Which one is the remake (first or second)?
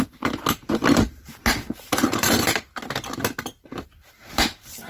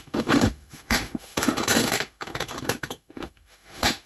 second